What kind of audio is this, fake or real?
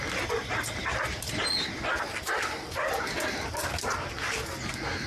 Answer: real